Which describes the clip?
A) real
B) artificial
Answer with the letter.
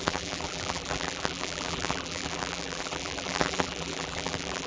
B